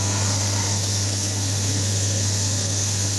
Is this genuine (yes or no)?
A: no